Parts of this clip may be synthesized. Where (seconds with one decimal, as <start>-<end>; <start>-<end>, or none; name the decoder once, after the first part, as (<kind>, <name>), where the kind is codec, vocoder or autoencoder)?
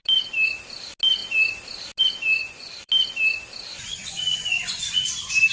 2.4-2.9 (vocoder, Vocos); 3.7-5.1